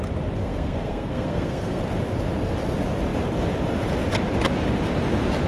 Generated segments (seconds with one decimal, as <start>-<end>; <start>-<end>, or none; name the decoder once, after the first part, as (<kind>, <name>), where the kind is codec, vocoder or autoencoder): 0.4-1.8 (codec, SNAC)